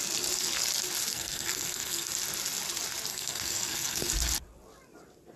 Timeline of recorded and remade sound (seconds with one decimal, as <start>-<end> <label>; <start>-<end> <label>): 0.0-1.1 recorded; 1.1-2.1 remade; 2.1-3.1 recorded; 3.1-4.1 remade; 4.1-5.4 recorded